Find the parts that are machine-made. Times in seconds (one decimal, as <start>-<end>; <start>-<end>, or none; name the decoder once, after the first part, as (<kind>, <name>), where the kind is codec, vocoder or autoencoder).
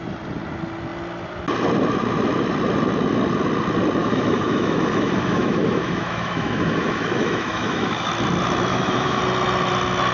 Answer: 4.0-8.1 (autoencoder, DAC-VAE); 8.7-9.2